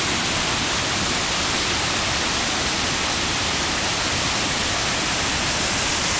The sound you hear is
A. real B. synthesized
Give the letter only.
A